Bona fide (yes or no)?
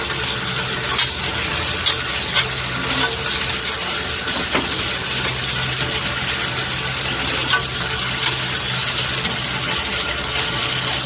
yes